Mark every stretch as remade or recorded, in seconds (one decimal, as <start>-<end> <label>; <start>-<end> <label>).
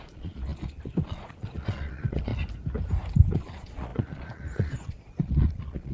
0.0-2.3 remade; 2.3-3.3 recorded; 3.3-5.9 remade